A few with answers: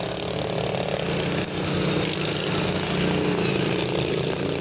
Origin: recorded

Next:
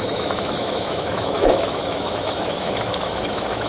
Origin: remade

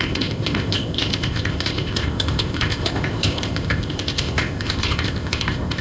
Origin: remade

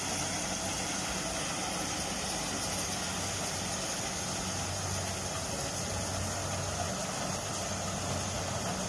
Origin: recorded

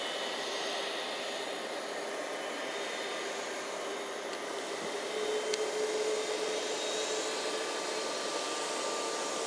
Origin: recorded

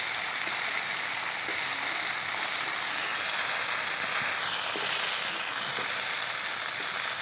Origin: recorded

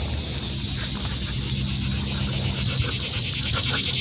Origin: recorded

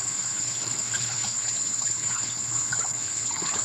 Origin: remade